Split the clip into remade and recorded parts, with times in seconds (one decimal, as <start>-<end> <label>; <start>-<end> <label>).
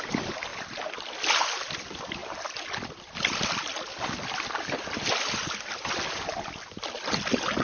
0.0-7.6 recorded